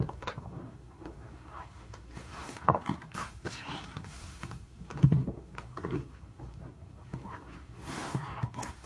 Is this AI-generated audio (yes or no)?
yes